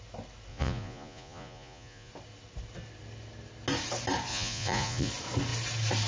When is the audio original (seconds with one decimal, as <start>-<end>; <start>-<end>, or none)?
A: 0.0-0.5; 2.1-4.3; 5.1-6.1